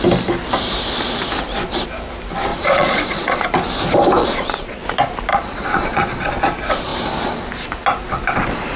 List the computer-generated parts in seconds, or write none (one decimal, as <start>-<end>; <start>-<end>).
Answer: 2.5-3.4; 4.2-4.8; 5.3-6.3